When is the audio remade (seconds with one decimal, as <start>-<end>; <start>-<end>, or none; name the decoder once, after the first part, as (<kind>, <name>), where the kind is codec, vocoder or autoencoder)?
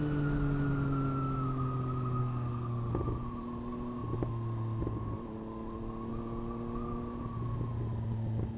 2.2-2.9 (codec, SNAC)